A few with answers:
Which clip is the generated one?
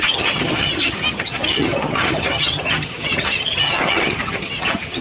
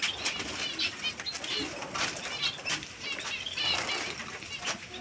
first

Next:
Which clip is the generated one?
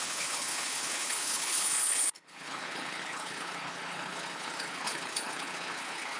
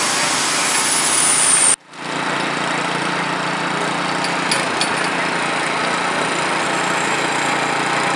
first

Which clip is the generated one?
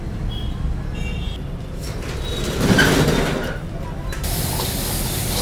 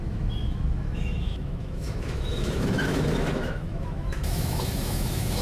second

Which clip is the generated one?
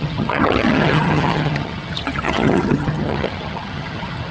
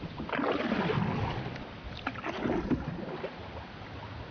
first